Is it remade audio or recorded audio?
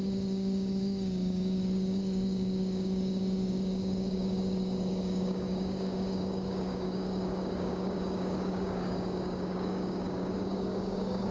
remade